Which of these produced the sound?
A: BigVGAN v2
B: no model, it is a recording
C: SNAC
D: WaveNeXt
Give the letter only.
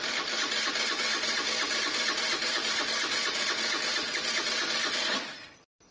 A